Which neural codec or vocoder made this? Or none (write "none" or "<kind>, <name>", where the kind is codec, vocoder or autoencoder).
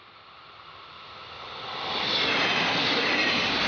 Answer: none